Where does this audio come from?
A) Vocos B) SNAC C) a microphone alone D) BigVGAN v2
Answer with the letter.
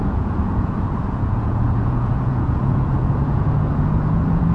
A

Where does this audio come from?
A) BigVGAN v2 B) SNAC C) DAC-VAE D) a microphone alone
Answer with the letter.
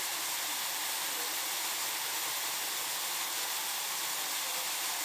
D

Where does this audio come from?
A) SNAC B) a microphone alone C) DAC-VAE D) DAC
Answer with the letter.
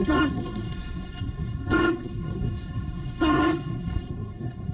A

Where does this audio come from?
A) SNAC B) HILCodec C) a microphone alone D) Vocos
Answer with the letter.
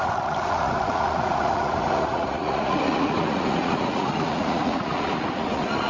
D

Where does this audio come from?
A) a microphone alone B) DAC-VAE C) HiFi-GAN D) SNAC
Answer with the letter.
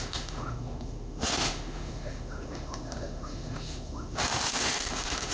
B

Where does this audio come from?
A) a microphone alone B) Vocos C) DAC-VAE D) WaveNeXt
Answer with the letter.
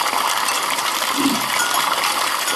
A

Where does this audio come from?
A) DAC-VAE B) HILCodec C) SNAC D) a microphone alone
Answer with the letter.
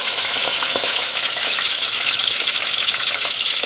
A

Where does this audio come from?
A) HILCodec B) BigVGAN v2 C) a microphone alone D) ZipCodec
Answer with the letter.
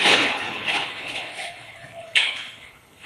A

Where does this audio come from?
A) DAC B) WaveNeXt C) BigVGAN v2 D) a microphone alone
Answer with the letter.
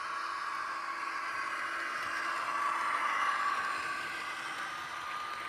D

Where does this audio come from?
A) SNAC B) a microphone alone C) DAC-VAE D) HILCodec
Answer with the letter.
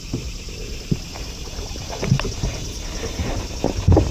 B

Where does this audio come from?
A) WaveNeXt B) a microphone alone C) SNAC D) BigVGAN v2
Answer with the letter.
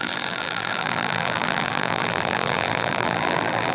D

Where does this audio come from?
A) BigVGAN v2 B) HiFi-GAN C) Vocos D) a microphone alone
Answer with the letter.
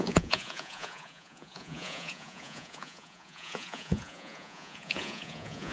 C